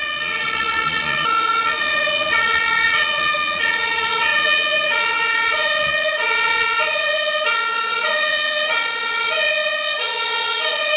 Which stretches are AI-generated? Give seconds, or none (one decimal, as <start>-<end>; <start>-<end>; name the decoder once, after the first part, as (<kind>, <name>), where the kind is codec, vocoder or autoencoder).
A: 0.0-11.0 (vocoder, Vocos)